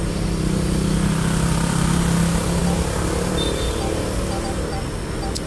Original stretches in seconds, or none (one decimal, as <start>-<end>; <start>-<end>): 0.0-5.5